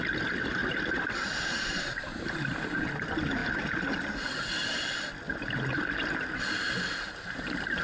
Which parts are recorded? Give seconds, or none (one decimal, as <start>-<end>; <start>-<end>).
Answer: 0.0-7.8